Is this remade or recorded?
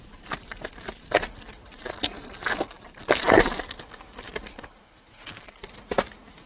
recorded